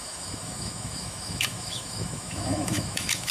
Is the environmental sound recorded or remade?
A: remade